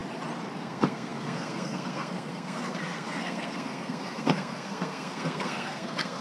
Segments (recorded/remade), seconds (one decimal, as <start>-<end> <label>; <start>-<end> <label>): 0.0-0.6 recorded; 0.6-6.2 remade